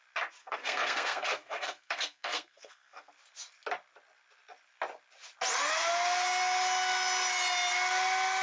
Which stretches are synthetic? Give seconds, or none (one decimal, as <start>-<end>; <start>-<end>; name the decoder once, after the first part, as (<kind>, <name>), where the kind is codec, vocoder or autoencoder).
0.4-3.1 (codec, SNAC)